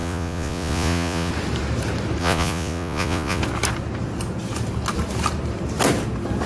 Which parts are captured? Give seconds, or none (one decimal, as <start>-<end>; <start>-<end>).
1.3-2.2; 3.4-6.5